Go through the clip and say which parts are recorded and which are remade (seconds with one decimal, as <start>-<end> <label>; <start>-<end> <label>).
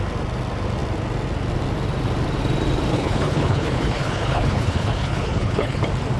0.0-2.9 recorded; 2.9-5.8 remade; 5.8-6.2 recorded